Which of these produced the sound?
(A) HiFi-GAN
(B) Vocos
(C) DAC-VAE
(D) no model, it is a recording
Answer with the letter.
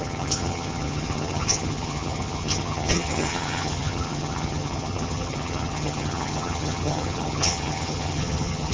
A